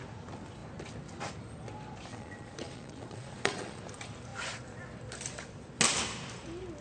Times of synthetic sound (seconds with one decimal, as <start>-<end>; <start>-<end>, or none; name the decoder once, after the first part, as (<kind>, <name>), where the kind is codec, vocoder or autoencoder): 2.1-3.8 (vocoder, Vocos)